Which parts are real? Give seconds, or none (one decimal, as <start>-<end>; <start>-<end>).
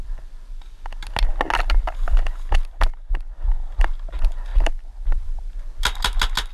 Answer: 0.0-4.5; 5.6-6.5